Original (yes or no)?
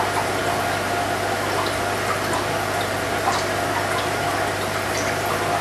yes